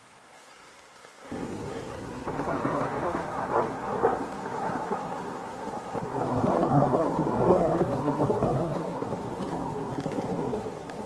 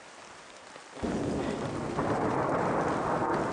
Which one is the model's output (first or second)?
first